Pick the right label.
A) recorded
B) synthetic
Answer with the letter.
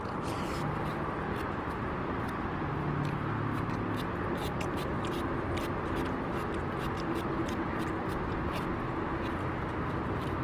A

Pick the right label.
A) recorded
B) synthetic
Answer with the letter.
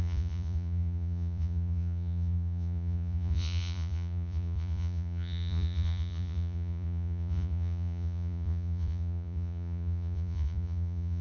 B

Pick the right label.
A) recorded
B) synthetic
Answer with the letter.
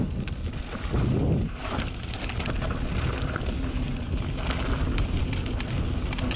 A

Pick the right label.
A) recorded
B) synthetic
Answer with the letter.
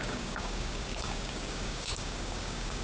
B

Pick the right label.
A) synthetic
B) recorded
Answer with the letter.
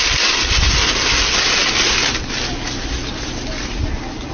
B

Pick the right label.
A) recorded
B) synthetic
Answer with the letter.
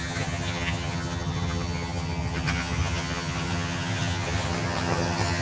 B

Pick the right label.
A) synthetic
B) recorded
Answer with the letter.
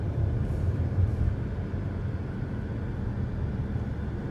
B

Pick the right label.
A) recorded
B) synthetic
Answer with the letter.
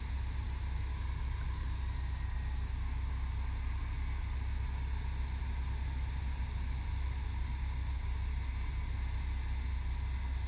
A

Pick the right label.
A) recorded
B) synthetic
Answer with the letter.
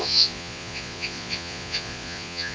B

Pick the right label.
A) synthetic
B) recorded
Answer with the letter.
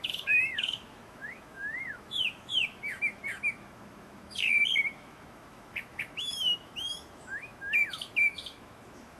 A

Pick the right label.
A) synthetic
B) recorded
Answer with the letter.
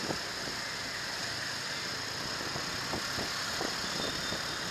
B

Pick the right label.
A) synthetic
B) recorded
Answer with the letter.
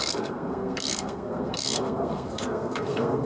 A